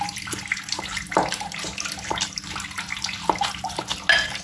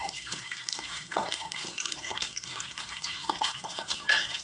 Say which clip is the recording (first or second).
first